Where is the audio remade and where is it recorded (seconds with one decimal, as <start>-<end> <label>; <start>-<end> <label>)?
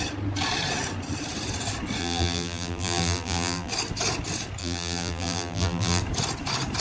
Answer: 0.0-2.0 recorded; 2.0-3.7 remade; 3.7-4.6 recorded; 4.6-6.0 remade; 6.0-6.8 recorded